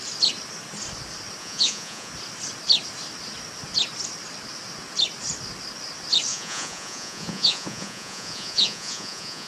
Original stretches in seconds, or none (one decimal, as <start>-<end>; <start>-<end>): 0.0-1.4; 2.1-6.3